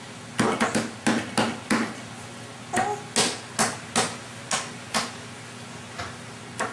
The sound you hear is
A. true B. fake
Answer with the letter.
A